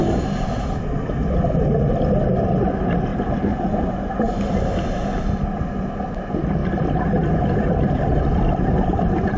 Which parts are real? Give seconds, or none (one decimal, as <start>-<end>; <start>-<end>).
0.0-9.4